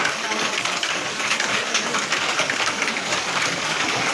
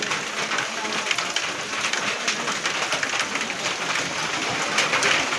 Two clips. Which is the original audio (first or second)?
second